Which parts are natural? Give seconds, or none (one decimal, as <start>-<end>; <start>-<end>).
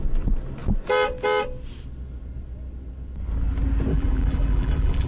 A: 0.0-3.9